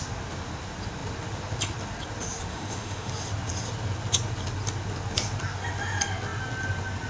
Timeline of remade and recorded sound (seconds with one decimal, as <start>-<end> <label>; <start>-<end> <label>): 0.0-2.5 recorded; 2.5-3.1 remade; 3.1-7.1 recorded